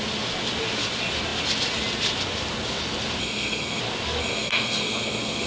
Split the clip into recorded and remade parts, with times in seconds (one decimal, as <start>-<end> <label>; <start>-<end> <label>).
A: 0.0-3.2 recorded; 3.2-3.8 remade; 3.8-4.2 recorded; 4.2-5.5 remade